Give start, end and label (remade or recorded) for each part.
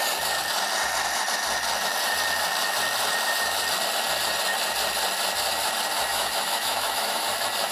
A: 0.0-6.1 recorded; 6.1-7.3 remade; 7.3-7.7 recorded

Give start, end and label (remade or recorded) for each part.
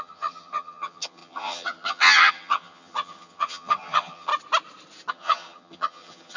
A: 0.0-4.3 remade; 4.3-5.1 recorded; 5.1-6.4 remade